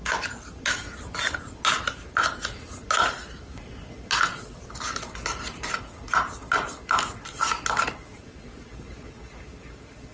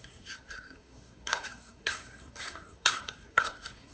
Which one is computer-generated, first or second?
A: second